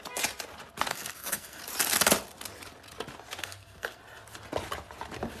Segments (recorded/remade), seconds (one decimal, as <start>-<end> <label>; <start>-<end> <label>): 0.0-0.9 recorded; 0.9-1.6 remade; 1.6-3.4 recorded; 3.4-4.0 remade; 4.0-5.4 recorded